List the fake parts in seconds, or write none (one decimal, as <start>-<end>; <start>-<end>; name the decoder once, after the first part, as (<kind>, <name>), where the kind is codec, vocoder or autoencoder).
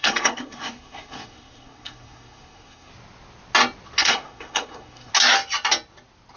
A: 0.0-2.9 (codec, SNAC); 4.0-5.1